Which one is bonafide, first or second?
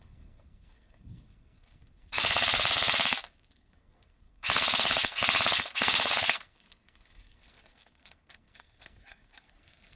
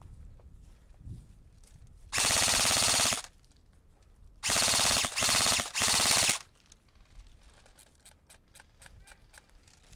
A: second